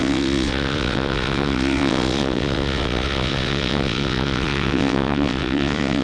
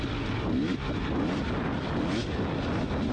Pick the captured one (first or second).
second